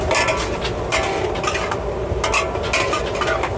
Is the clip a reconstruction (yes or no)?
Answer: no